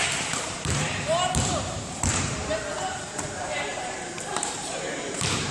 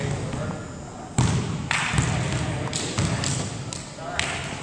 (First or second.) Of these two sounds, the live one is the second